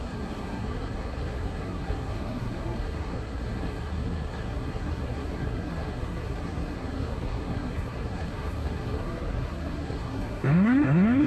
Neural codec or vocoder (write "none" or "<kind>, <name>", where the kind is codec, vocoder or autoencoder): codec, SNAC